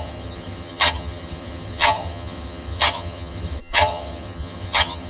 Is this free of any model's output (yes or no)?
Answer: no